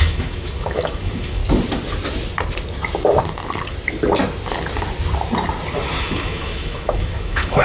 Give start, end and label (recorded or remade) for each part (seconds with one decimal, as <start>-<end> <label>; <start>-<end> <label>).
0.0-1.4 remade; 1.4-6.0 recorded; 6.0-7.6 remade